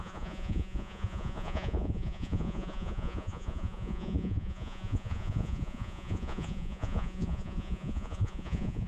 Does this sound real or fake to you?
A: fake